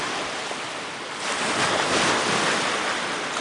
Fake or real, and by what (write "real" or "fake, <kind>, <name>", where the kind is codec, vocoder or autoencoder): real